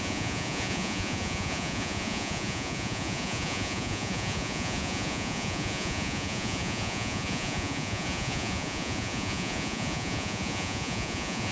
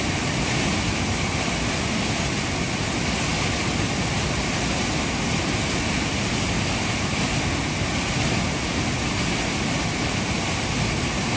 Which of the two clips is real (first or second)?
second